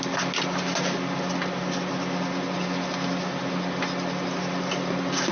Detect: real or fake real